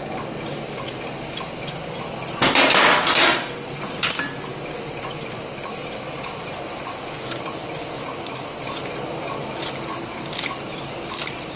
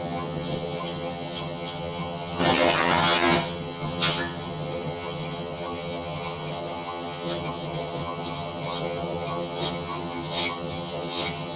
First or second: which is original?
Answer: first